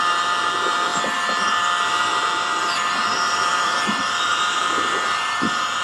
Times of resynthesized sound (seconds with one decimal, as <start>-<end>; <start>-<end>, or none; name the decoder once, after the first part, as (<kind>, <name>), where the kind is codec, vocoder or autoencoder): 0.0-5.8 (vocoder, BigVGAN v2)

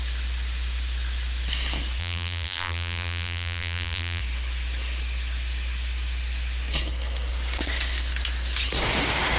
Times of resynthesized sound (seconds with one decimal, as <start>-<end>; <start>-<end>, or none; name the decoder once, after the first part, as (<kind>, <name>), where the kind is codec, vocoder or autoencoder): 2.0-4.2 (vocoder, BigVGAN v2)

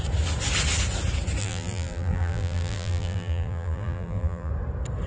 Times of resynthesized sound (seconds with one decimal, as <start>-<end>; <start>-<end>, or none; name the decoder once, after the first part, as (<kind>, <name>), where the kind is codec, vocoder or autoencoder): 1.4-4.5 (vocoder, BigVGAN v2)

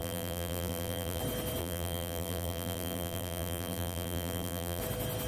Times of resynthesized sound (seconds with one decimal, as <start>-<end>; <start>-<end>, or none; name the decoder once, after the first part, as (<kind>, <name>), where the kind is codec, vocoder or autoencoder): 0.0-1.2 (vocoder, BigVGAN v2); 1.6-4.8